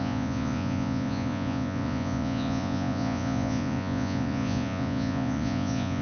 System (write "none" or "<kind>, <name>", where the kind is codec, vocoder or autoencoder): vocoder, Vocos